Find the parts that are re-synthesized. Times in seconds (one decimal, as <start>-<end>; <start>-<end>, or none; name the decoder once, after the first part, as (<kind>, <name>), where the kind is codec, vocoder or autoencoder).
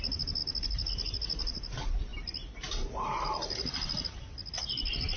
none